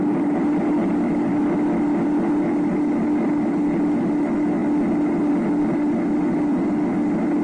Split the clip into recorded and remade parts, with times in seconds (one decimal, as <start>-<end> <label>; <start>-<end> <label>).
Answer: 0.0-7.4 recorded